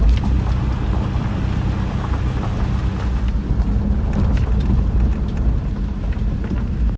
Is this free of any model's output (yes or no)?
yes